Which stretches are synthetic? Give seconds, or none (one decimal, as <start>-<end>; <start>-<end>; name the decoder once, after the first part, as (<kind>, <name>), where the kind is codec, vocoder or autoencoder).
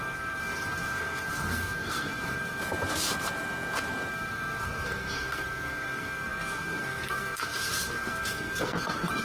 0.0-2.6 (codec, SNAC); 4.1-9.2